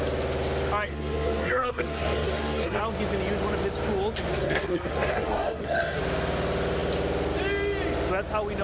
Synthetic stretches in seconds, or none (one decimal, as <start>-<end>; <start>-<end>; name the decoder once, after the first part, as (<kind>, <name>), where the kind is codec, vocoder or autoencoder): 0.9-2.8 (codec, SNAC); 4.3-6.0